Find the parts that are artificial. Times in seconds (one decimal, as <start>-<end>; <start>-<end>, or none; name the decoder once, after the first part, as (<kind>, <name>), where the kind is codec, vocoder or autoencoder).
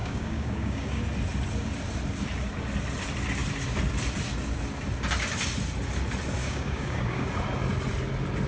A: 0.0-1.0 (codec, DAC); 6.4-7.3